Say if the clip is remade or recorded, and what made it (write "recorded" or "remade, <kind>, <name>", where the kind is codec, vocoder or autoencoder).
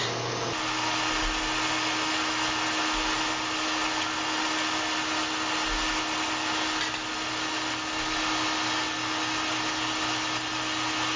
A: recorded